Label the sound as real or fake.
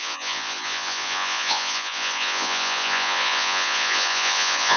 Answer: fake